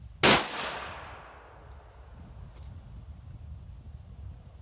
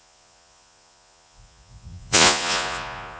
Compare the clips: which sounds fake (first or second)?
second